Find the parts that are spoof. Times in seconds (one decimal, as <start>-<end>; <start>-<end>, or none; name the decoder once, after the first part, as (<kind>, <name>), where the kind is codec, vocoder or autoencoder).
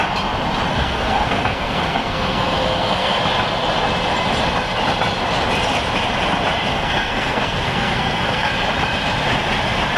0.7-3.2 (codec, SNAC); 6.7-8.5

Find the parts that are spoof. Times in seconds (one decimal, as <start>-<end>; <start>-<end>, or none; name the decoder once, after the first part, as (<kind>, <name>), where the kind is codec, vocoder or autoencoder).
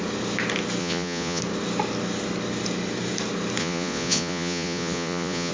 0.8-1.4 (vocoder, Vocos); 3.6-5.5